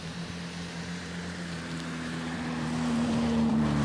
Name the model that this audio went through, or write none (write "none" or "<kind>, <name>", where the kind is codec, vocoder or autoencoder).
vocoder, BigVGAN v2